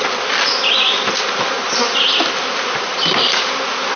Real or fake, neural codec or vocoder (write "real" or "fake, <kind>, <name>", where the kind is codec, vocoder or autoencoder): real